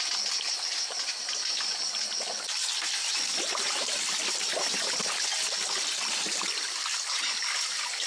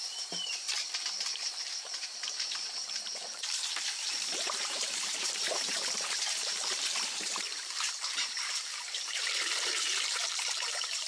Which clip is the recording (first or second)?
first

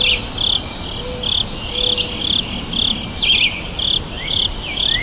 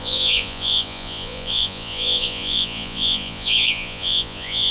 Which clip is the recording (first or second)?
first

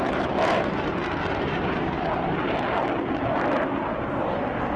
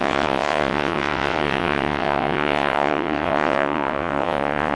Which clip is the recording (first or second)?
first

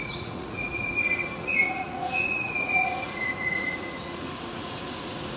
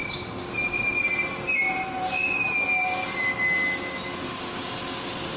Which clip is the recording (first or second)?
second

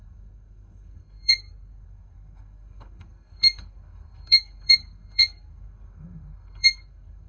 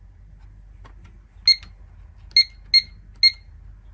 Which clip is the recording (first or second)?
second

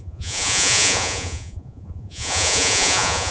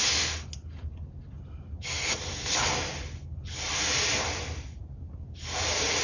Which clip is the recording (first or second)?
second